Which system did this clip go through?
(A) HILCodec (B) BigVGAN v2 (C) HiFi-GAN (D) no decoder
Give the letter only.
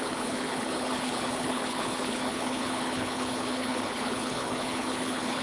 A